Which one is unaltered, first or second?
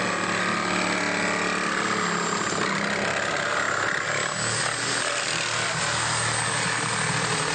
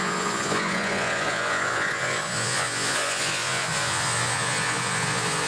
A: first